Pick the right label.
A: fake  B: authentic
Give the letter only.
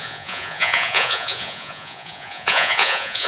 A